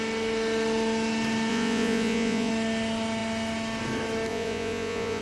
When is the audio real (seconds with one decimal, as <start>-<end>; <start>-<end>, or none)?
0.0-1.5; 2.5-4.3